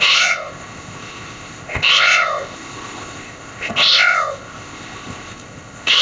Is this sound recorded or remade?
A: remade